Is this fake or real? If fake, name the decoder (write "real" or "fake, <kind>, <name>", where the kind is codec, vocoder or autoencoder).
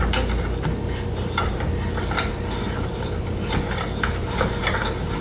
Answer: real